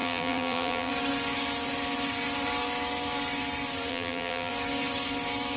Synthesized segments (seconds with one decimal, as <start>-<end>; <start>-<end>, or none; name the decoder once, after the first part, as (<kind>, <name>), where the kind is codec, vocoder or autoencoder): 0.0-0.9 (vocoder, BigVGAN v2); 3.9-4.5